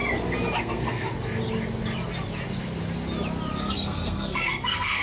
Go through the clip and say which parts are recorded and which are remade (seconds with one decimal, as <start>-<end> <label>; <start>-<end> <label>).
0.0-0.6 recorded; 0.6-1.1 remade; 1.1-3.6 recorded; 3.6-5.0 remade